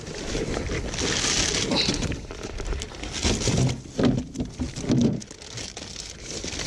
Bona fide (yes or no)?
yes